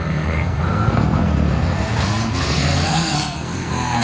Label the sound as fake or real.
fake